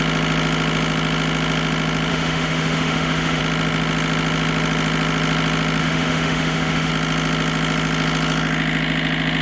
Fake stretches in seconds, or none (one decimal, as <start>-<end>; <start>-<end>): 2.1-3.4; 5.8-6.9